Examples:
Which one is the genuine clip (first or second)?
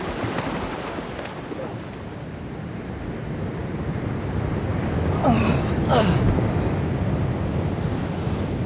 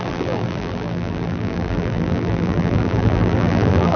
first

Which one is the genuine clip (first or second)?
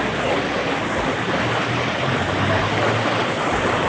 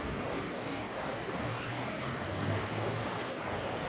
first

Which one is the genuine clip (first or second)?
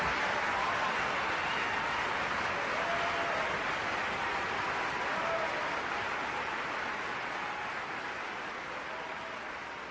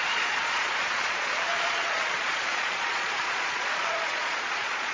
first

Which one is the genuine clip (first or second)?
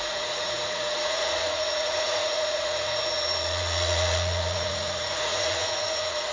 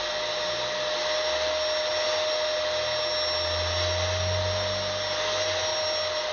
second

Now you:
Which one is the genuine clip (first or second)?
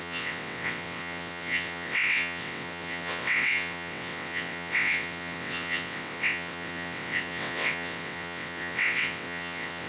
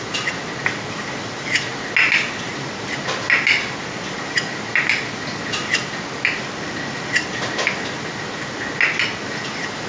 second